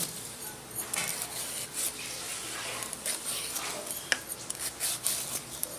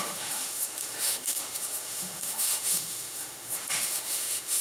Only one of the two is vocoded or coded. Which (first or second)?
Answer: second